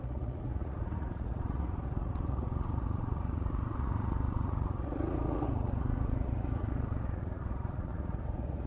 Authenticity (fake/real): fake